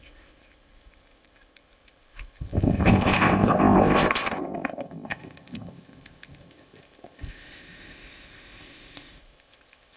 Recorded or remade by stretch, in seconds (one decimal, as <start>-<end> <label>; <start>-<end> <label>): 0.0-10.0 remade